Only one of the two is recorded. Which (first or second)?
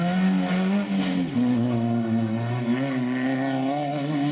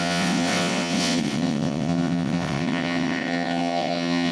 first